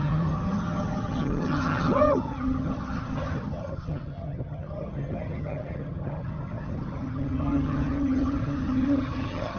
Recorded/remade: remade